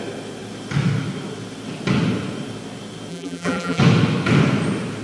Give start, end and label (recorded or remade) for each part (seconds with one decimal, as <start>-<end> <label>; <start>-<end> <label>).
0.0-3.1 recorded; 3.1-3.8 remade; 3.8-5.0 recorded